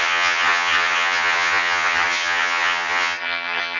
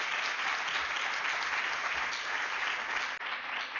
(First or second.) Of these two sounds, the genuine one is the second